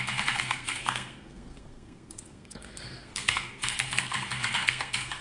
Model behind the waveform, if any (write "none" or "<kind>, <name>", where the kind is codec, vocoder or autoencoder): codec, SNAC